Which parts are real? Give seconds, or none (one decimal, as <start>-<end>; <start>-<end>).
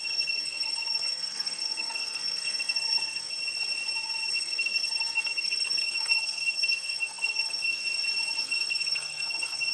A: 3.3-4.3; 7.8-8.4